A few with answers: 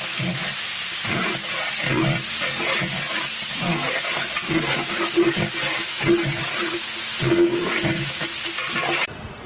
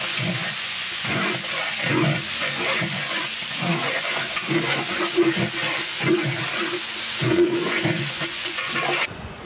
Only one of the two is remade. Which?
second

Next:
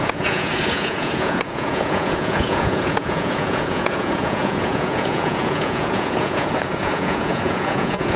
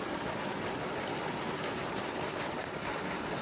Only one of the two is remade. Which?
first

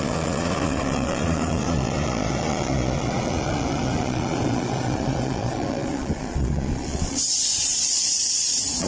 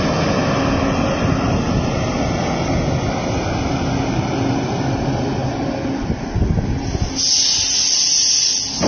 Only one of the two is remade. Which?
first